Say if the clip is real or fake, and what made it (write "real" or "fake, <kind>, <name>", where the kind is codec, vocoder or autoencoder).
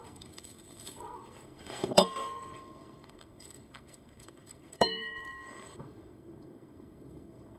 fake, codec, SNAC